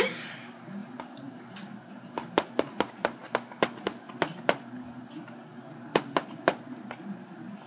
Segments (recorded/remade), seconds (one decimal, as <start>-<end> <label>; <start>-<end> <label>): 0.0-7.7 recorded

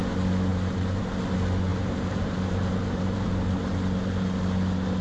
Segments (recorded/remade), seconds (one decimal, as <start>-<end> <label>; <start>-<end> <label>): 0.0-0.5 recorded; 0.5-1.0 remade; 1.0-1.7 recorded; 1.7-3.3 remade; 3.3-5.0 recorded

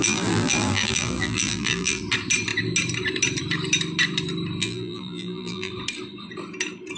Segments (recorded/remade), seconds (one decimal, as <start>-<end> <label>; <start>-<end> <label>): 0.0-2.0 remade; 2.0-4.6 recorded; 4.6-5.7 remade; 5.7-7.0 recorded

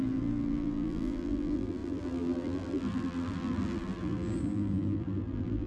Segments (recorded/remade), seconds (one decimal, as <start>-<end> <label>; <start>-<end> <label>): 0.0-5.7 remade

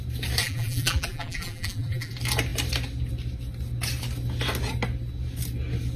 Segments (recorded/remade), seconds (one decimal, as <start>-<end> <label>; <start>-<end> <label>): 0.0-0.4 recorded; 0.4-2.1 remade; 2.1-6.0 recorded